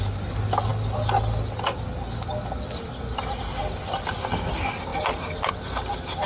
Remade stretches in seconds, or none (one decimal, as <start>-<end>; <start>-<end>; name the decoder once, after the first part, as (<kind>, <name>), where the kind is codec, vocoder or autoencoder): none